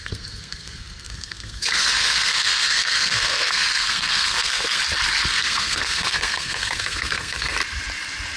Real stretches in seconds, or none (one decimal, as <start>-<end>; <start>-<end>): 4.8-5.3; 7.6-8.4